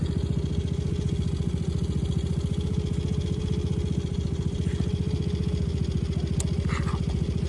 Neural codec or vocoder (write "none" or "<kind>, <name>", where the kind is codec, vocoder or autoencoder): none